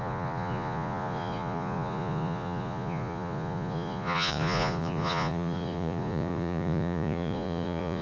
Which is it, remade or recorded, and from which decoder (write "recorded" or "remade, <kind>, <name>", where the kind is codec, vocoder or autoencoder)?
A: remade, vocoder, Vocos